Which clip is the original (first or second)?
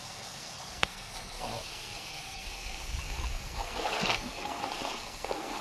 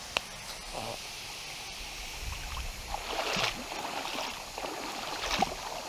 second